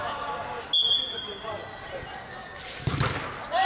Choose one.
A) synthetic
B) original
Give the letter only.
B